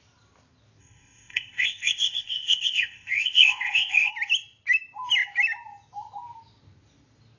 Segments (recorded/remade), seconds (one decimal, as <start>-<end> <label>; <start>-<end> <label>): 0.0-0.8 recorded; 0.8-4.1 remade; 4.1-7.4 recorded

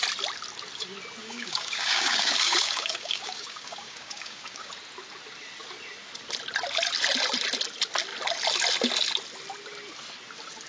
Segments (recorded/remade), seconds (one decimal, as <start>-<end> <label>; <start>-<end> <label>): 0.0-1.2 recorded; 1.2-4.7 remade; 4.7-10.7 recorded

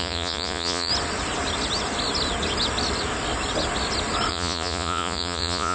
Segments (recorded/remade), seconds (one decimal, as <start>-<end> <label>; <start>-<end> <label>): 0.0-0.9 remade; 0.9-4.3 recorded; 4.3-5.7 remade

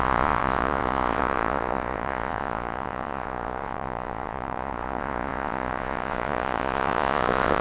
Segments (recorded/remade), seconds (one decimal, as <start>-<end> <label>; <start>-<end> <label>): 0.0-7.6 remade